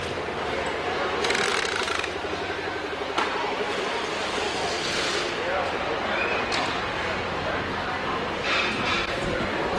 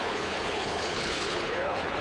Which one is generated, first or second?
second